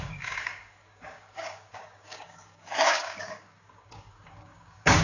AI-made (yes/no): yes